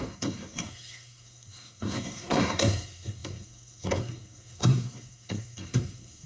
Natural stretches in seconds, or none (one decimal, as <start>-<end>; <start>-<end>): none